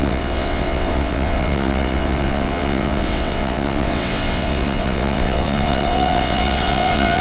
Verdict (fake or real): fake